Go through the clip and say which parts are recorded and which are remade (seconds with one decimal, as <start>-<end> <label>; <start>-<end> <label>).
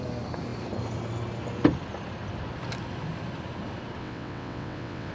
0.0-4.0 recorded; 4.0-5.1 remade